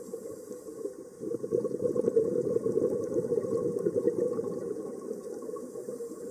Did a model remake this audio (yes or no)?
yes